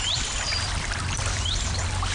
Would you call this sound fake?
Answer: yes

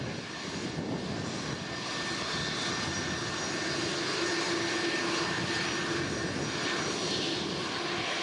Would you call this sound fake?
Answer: no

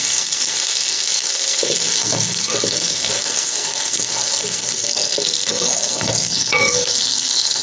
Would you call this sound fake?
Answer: yes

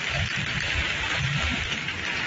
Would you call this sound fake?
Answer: yes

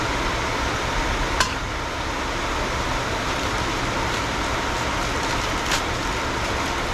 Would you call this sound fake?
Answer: no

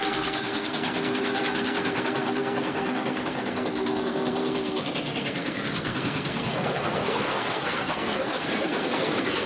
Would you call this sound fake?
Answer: yes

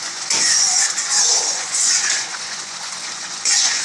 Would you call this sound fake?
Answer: yes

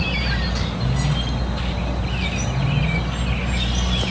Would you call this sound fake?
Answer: no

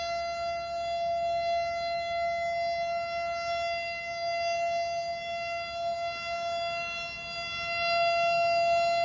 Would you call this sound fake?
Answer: no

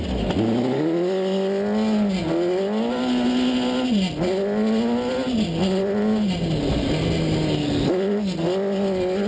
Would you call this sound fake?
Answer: no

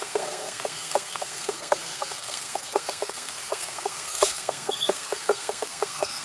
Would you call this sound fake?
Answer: yes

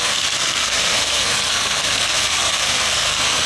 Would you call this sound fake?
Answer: yes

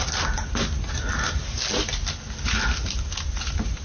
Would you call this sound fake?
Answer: no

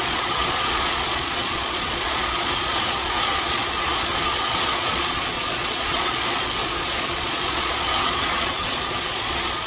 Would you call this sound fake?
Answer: yes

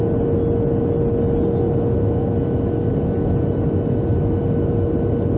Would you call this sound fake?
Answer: no